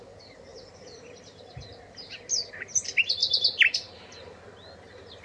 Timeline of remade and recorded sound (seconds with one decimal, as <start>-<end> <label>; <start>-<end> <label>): 0.0-5.2 recorded

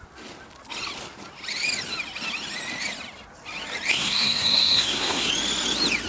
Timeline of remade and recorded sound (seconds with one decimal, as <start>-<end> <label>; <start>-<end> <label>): 0.0-3.9 recorded; 3.9-5.3 remade; 5.3-6.1 recorded

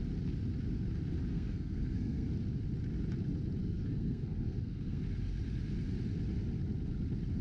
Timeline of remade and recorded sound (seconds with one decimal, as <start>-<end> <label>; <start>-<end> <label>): 0.0-1.3 recorded; 1.3-2.3 remade; 2.3-3.6 recorded; 3.6-5.0 remade; 5.0-7.4 recorded

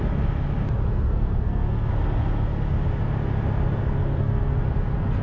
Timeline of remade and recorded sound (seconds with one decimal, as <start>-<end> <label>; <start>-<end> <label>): 0.0-0.9 recorded; 0.9-1.9 remade; 1.9-4.0 recorded; 4.0-4.6 remade; 4.6-5.2 recorded

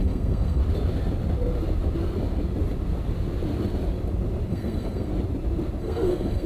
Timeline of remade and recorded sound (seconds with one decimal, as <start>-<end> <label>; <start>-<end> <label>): 0.0-0.6 remade; 0.6-4.5 recorded; 4.5-5.1 remade; 5.1-5.8 recorded; 5.8-6.5 remade

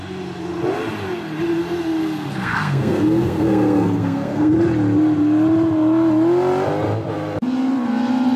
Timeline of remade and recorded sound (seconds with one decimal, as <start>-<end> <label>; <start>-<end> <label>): 0.0-2.0 recorded; 2.0-4.5 remade; 4.5-8.4 recorded

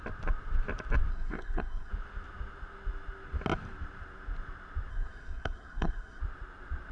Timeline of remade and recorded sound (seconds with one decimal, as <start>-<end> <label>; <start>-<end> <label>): 0.0-1.1 recorded; 1.1-1.9 remade; 1.9-4.9 recorded; 4.9-6.2 remade; 6.2-6.9 recorded

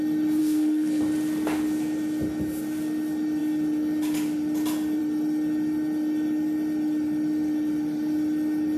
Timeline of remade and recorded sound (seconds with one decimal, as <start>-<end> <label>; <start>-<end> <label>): 0.0-0.4 recorded; 0.4-1.0 remade; 1.0-8.8 recorded